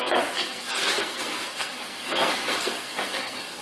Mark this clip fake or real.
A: fake